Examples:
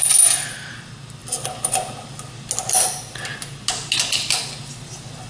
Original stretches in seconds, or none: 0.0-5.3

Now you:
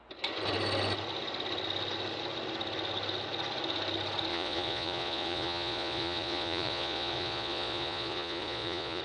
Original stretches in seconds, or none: 0.0-4.3

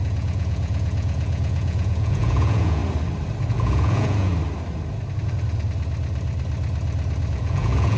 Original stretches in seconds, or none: 2.8-3.5; 4.3-7.3

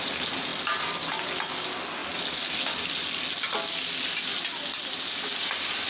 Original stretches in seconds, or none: 0.0-5.9

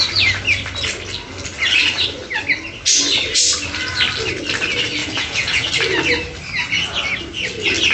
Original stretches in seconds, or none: 0.0-5.0; 5.7-7.9